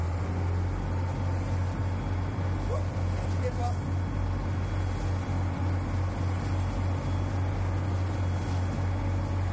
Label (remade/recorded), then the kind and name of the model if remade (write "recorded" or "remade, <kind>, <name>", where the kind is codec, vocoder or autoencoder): recorded